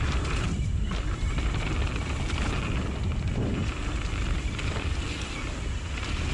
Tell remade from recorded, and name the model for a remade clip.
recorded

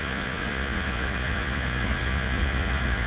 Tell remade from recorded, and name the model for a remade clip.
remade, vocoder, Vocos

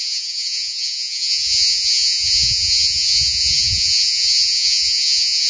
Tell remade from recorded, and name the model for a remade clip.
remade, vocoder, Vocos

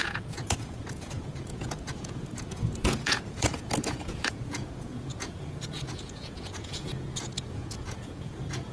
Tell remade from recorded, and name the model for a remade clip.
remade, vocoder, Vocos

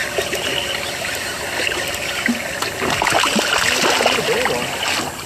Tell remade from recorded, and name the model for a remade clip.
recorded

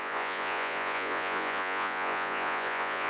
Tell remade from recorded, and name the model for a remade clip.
remade, vocoder, Vocos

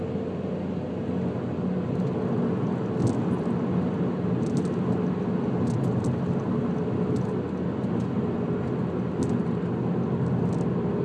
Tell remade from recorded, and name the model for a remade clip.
recorded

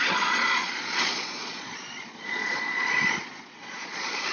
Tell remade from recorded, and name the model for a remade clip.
remade, vocoder, Vocos